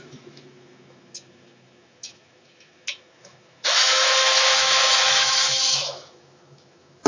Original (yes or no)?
no